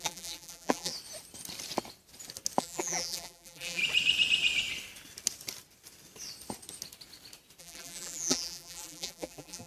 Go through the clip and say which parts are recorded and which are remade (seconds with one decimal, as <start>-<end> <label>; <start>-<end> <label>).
0.0-0.9 remade; 0.9-2.6 recorded; 2.6-3.8 remade; 3.8-7.6 recorded; 7.6-9.7 remade